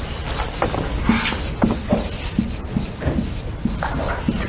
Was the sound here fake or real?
real